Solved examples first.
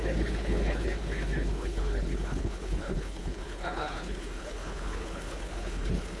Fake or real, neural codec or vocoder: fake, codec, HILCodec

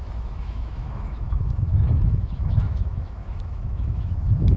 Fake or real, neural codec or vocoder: fake, autoencoder, DAC-VAE